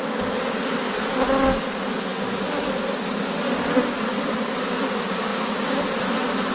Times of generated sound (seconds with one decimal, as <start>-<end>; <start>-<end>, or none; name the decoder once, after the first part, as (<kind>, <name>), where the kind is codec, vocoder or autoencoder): none